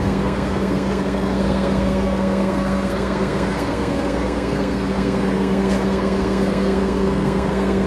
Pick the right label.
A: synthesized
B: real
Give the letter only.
A